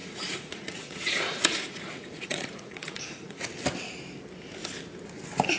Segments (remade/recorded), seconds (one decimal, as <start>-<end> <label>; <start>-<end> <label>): 0.0-3.4 remade; 3.4-5.6 recorded